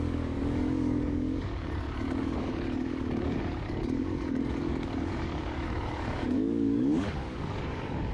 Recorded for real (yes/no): no